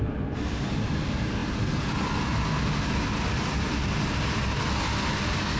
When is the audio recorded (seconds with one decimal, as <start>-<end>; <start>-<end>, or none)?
0.0-5.6